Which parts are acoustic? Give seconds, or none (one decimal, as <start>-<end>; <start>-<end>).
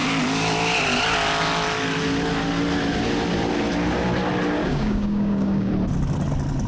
0.0-4.6; 5.7-6.7